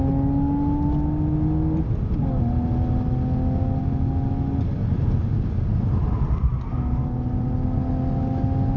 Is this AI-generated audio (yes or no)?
no